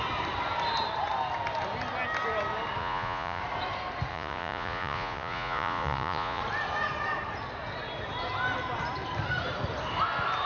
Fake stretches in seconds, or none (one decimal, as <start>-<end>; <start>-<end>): 2.8-3.4; 4.1-6.4